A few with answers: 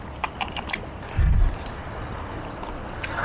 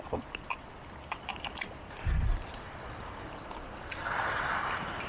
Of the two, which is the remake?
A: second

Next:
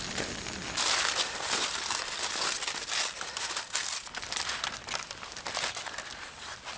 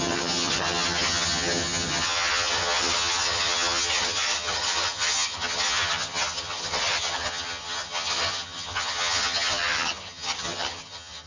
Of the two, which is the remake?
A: second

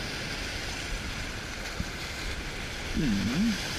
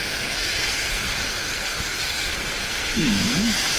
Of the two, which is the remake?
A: second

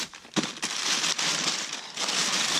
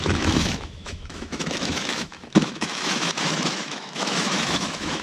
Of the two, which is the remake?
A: second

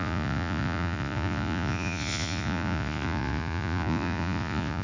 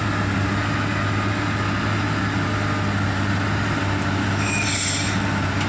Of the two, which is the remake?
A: first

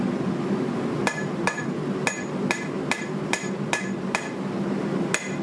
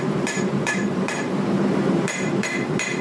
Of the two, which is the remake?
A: second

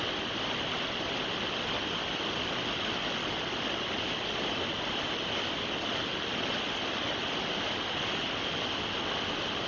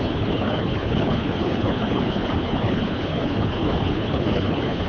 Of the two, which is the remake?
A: second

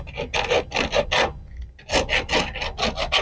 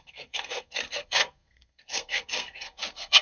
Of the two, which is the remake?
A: second